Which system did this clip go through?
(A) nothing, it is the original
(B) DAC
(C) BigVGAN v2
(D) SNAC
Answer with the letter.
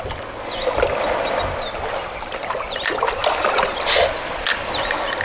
A